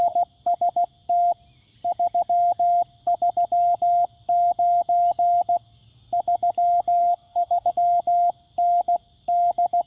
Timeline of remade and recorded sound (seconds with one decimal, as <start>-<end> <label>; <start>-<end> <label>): 0.0-7.0 recorded; 7.0-7.7 remade; 7.7-9.9 recorded